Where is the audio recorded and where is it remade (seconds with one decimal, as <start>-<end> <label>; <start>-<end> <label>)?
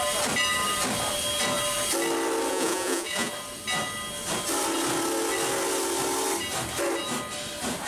0.0-2.5 recorded; 2.5-3.3 remade; 3.3-7.9 recorded